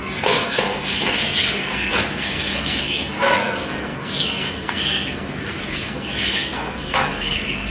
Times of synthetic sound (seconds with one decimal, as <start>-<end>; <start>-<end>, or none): 0.0-7.7